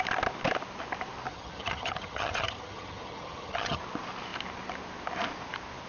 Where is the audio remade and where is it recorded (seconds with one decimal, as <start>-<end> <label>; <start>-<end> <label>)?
0.0-1.3 recorded; 1.3-3.8 remade; 3.8-5.9 recorded

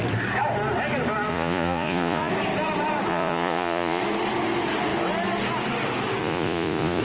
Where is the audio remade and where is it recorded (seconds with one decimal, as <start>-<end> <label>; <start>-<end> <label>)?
0.0-1.3 recorded; 1.3-2.3 remade; 2.3-3.1 recorded; 3.1-4.0 remade; 4.0-6.2 recorded; 6.2-7.0 remade

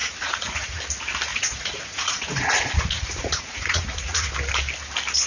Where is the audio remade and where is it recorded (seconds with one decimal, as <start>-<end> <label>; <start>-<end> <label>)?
0.0-0.8 remade; 0.8-1.3 recorded; 1.3-4.3 remade; 4.3-5.3 recorded

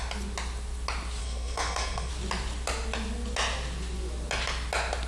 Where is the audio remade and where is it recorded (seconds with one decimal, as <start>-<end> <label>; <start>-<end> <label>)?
0.0-1.2 recorded; 1.2-2.1 remade; 2.1-5.1 recorded

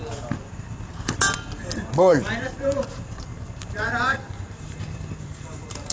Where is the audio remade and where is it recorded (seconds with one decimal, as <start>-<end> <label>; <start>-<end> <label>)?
0.0-2.1 recorded; 2.1-5.9 remade

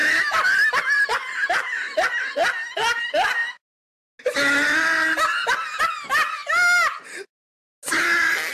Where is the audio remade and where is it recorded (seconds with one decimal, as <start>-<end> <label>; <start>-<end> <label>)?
0.0-8.5 recorded

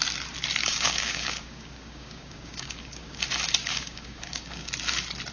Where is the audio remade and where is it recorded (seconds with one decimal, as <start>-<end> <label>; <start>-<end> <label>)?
0.0-0.6 recorded; 0.6-3.2 remade; 3.2-3.6 recorded; 3.6-4.7 remade; 4.7-5.3 recorded

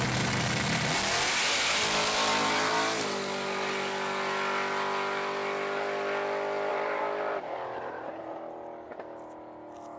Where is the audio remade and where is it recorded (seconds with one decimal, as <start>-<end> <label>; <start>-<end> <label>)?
0.0-6.7 recorded; 6.7-8.2 remade; 8.2-10.0 recorded